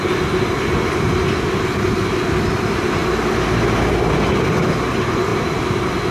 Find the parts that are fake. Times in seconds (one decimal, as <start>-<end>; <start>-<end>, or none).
5.3-6.1